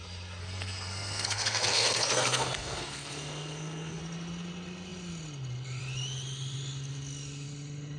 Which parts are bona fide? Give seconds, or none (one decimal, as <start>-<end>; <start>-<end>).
0.0-0.4; 4.0-8.0